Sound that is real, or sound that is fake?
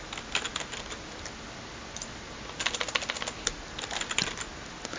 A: real